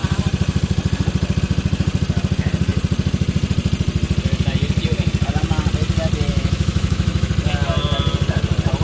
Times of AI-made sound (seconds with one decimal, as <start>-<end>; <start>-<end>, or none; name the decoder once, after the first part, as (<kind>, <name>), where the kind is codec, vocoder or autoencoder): 6.3-7.3 (autoencoder, DAC-VAE)